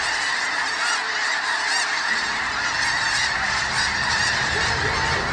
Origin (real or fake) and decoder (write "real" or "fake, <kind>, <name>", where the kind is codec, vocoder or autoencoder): real